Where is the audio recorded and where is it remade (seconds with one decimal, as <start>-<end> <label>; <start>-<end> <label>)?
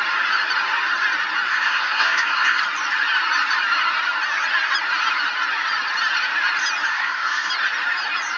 0.0-1.5 recorded; 1.5-2.6 remade; 2.6-6.9 recorded; 6.9-7.5 remade; 7.5-8.4 recorded